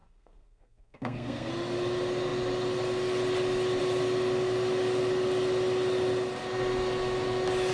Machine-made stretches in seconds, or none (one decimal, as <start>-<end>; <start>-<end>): 0.0-1.5